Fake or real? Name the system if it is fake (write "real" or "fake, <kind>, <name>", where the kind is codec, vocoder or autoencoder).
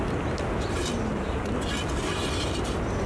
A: real